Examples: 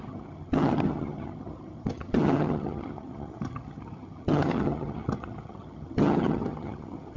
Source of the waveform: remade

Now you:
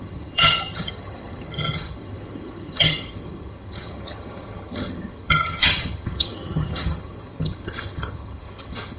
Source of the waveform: remade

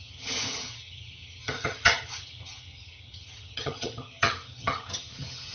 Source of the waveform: remade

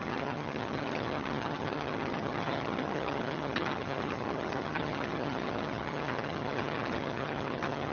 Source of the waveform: remade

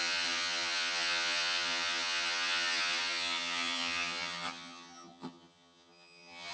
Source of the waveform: remade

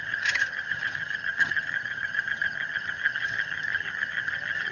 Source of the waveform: remade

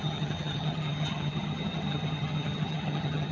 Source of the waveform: remade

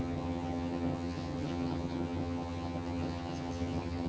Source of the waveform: remade